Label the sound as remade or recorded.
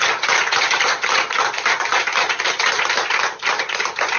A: recorded